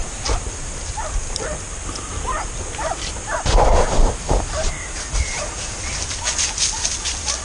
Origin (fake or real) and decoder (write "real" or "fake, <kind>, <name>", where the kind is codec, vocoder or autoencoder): real